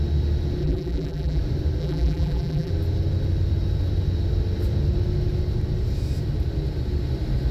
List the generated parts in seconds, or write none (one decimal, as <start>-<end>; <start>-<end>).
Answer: 0.6-1.4; 1.8-2.7